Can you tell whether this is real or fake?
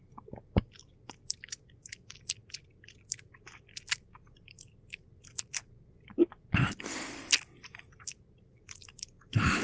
real